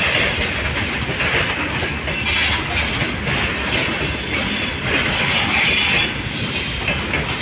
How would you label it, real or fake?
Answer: real